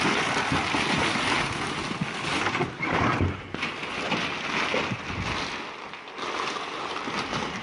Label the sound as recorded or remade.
recorded